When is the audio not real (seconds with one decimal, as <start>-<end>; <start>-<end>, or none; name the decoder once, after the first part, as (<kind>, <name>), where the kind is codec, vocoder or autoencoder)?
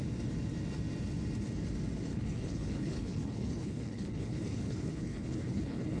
2.1-6.0 (codec, HILCodec)